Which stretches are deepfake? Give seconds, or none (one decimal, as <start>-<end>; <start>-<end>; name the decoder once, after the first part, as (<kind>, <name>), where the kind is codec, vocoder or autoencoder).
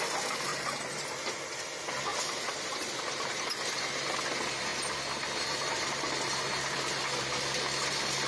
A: 0.5-1.6 (vocoder, BigVGAN v2); 2.1-4.2